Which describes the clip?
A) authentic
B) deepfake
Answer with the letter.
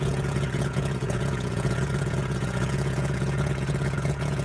B